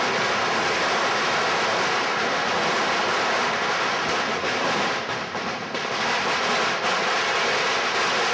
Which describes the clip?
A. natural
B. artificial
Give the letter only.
A